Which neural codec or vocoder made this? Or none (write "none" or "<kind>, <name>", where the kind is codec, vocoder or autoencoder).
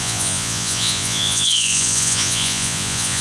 vocoder, Vocos